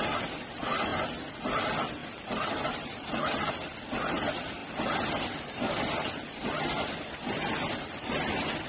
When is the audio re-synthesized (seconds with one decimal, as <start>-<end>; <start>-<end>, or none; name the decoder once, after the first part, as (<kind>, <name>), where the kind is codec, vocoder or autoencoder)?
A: 2.0-3.5 (vocoder, BigVGAN v2)

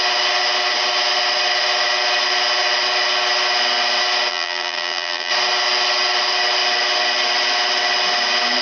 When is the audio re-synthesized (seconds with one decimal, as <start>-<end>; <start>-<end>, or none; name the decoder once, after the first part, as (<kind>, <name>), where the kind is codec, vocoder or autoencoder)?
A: 4.3-5.3 (vocoder, BigVGAN v2)

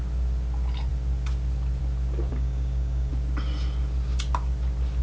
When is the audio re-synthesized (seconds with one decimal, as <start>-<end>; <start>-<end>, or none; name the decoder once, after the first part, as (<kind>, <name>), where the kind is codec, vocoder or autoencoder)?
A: 2.3-3.1 (codec, DAC)

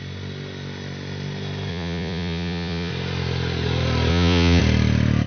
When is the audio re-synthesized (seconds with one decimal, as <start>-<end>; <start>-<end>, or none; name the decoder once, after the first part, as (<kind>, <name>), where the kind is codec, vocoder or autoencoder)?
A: 1.7-2.9 (vocoder, Vocos); 4.1-4.6

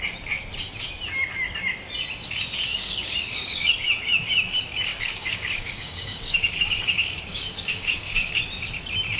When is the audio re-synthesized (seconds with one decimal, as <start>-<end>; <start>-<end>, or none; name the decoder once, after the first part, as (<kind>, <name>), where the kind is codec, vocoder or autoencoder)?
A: 2.7-3.7 (codec, DAC); 4.9-8.4